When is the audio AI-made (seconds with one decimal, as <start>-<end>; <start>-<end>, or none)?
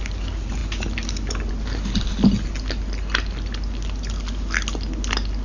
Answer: none